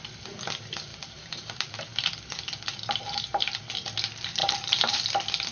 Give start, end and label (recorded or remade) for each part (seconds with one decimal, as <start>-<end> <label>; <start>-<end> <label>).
0.0-0.9 recorded; 0.9-1.9 remade; 1.9-4.4 recorded; 4.4-5.0 remade; 5.0-5.5 recorded